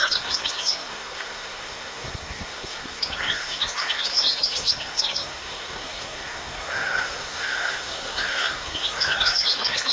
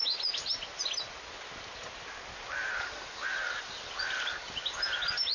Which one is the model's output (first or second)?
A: first